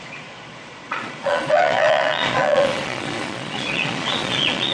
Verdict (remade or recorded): remade